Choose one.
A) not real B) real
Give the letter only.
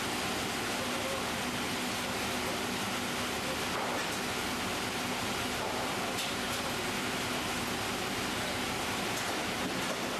B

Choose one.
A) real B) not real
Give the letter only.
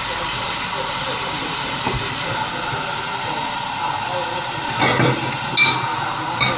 A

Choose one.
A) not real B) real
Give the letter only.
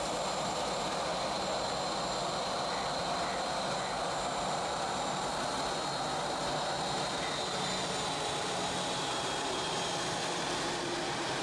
B